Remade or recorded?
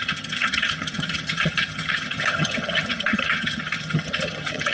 remade